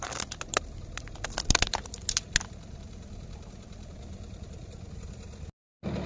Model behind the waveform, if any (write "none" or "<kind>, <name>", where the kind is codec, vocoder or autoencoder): none